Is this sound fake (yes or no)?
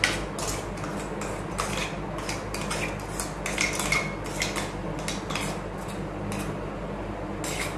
no